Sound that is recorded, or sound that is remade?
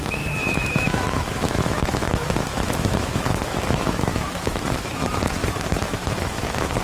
remade